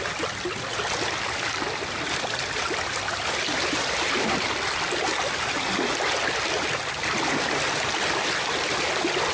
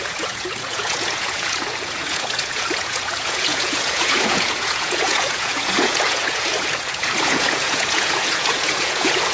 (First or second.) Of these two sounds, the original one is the first